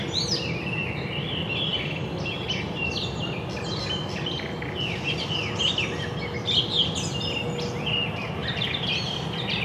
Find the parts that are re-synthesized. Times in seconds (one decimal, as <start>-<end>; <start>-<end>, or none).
none